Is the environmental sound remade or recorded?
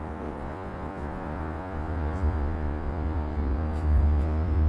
remade